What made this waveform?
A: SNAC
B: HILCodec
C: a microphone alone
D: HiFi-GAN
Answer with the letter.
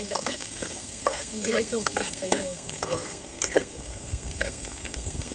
A